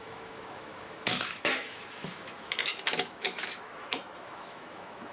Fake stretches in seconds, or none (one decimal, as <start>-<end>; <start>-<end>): 0.0-5.1